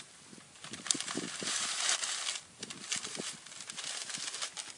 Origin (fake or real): real